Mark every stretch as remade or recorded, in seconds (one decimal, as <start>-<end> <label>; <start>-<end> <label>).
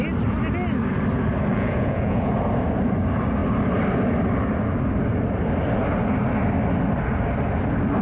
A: 0.0-1.5 recorded; 1.5-2.3 remade; 2.3-8.0 recorded